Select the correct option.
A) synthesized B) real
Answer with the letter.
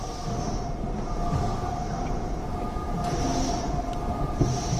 B